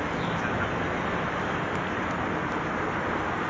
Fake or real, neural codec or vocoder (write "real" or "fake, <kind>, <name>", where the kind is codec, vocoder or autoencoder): real